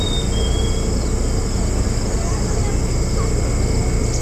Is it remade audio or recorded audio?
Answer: recorded